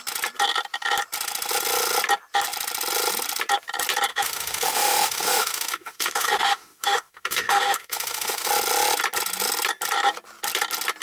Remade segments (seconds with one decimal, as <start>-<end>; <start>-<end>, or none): 4.1-8.5